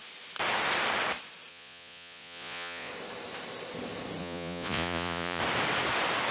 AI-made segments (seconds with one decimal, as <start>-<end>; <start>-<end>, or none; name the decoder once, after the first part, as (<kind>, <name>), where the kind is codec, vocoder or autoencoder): 1.5-2.9 (vocoder, Vocos); 4.2-5.4